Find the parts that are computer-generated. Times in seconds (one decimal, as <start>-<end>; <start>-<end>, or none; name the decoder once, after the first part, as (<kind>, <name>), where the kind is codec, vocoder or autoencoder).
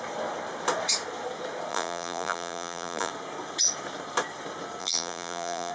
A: 1.7-3.1 (vocoder, BigVGAN v2); 4.8-5.7